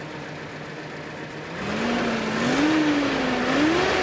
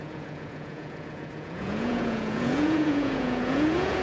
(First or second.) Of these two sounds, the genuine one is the first